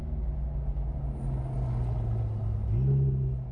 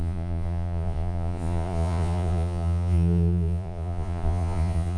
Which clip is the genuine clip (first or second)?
first